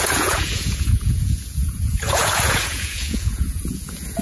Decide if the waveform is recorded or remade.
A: remade